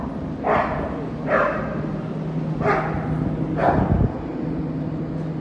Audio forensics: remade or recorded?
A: recorded